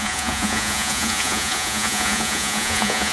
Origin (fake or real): fake